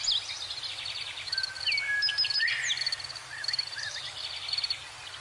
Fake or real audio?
real